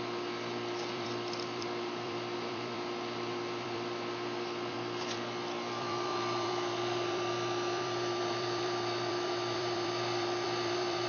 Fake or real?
fake